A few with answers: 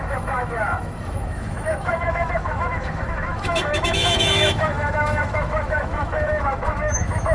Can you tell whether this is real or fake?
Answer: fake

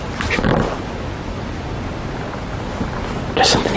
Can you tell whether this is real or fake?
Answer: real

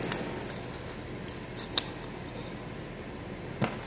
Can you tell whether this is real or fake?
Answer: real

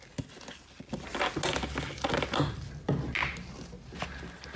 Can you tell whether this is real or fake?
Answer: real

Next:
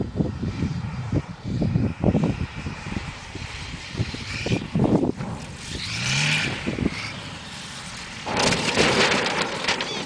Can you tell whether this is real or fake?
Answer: fake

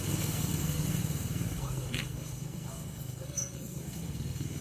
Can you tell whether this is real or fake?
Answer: fake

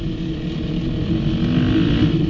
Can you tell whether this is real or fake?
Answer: real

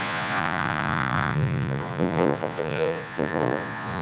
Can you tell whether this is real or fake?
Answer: fake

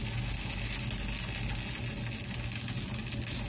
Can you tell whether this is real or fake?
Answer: real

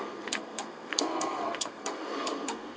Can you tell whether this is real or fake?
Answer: fake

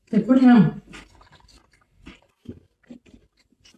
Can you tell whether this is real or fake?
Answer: real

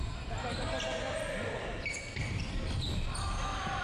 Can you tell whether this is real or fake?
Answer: real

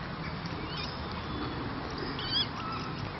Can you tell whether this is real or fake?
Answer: real